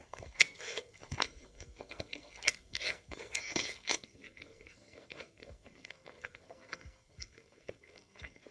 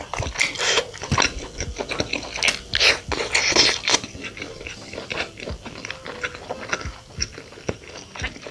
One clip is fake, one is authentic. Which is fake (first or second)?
first